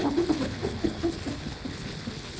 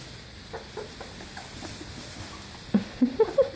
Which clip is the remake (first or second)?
first